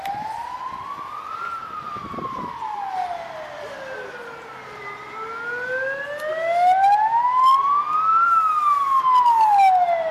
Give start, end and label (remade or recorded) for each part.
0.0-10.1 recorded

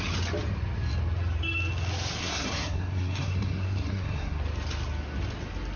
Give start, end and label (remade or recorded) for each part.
0.0-2.2 recorded; 2.2-4.4 remade; 4.4-5.8 recorded

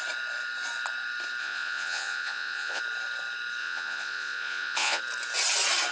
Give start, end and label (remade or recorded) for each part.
0.0-1.4 recorded; 1.4-2.8 remade; 2.8-3.6 recorded; 3.6-5.0 remade; 5.0-5.9 recorded

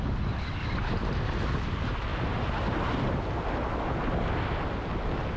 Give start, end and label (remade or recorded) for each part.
0.0-2.1 recorded; 2.1-3.2 remade; 3.2-5.4 recorded